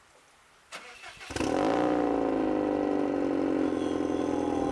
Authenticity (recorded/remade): recorded